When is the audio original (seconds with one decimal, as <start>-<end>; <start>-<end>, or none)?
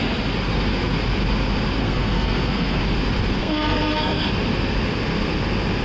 0.0-1.8; 2.8-3.4; 4.3-5.8